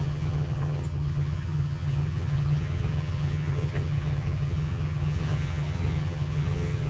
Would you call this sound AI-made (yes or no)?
yes